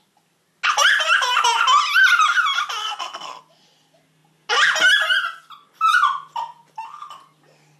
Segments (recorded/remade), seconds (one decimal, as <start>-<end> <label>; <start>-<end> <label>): 0.0-2.8 recorded; 2.8-3.4 remade; 3.4-7.8 recorded